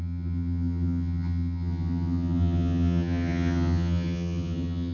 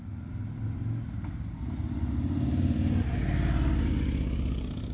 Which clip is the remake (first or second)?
first